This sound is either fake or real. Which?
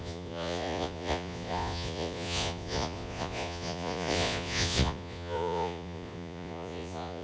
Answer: fake